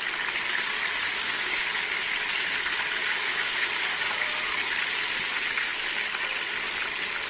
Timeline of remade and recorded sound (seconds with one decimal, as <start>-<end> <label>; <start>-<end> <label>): 0.0-1.2 recorded; 1.2-2.0 remade; 2.0-3.0 recorded; 3.0-4.1 remade; 4.1-7.3 recorded